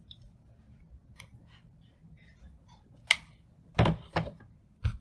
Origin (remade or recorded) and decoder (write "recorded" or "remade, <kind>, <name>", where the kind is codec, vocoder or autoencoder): recorded